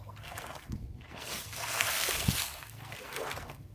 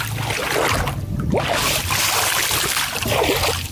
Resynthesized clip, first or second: first